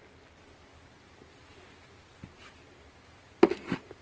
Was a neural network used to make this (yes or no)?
no